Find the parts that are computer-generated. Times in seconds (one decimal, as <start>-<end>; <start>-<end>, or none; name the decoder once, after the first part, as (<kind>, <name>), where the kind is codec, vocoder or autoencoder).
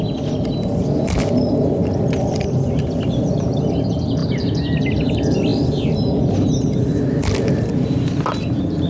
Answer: none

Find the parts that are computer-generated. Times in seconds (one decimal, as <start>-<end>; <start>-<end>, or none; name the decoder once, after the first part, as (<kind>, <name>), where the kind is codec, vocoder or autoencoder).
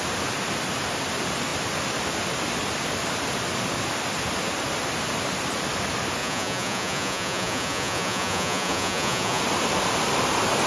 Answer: 6.2-9.4 (vocoder, Vocos)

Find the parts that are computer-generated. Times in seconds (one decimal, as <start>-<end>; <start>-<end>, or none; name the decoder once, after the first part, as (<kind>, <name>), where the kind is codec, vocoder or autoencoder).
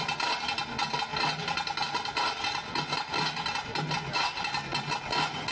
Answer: none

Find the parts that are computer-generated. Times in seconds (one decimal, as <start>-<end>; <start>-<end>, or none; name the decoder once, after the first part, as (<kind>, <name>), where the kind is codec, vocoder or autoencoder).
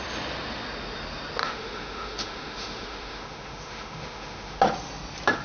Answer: 1.4-4.6 (autoencoder, DAC-VAE)